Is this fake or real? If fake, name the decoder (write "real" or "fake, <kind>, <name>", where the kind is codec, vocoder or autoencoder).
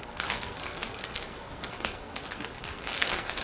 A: fake, codec, SNAC